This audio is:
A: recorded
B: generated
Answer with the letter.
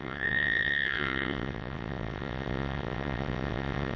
B